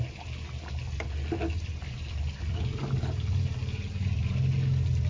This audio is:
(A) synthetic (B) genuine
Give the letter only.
B